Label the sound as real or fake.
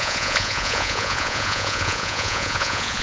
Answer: fake